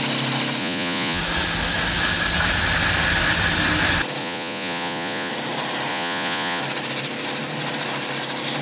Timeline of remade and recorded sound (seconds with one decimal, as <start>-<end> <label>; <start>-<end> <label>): 0.0-0.6 recorded; 0.6-1.2 remade; 1.2-4.2 recorded; 4.2-5.3 remade; 5.3-5.9 recorded; 5.9-6.6 remade; 6.6-8.6 recorded